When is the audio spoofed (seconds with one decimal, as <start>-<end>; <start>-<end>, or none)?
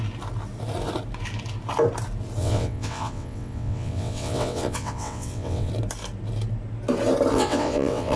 2.4-5.7; 7.3-8.2